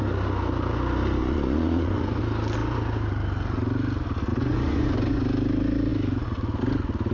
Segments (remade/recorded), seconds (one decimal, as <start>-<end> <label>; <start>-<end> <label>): 0.0-1.2 recorded; 1.2-2.2 remade; 2.2-4.3 recorded; 4.3-5.2 remade; 5.2-7.1 recorded